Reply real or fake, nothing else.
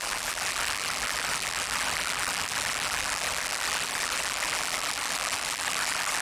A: fake